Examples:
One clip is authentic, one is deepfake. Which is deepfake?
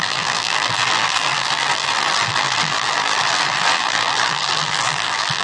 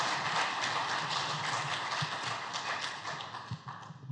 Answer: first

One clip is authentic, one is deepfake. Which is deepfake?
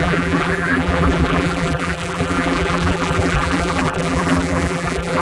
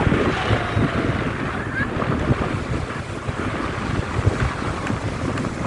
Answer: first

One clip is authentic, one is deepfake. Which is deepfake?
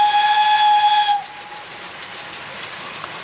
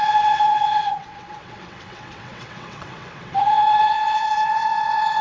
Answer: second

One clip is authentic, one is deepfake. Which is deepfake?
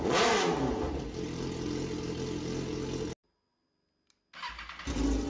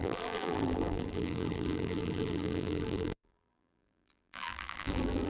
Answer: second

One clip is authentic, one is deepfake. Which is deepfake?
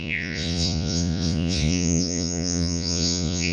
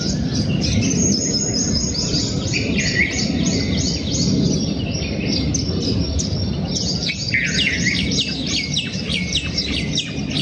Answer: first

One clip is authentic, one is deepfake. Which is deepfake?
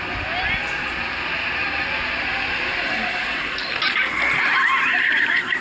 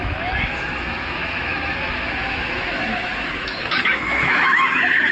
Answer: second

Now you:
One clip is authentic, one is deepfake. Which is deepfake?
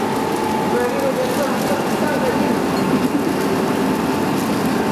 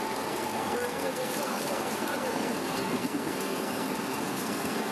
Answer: second